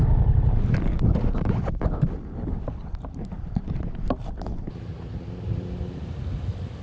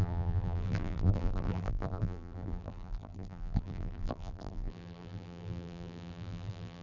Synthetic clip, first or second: second